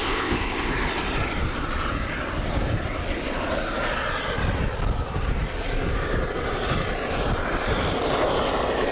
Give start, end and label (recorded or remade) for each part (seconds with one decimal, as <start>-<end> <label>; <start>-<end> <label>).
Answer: 0.0-0.7 remade; 0.7-8.9 recorded